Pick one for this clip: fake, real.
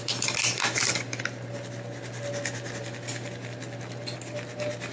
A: real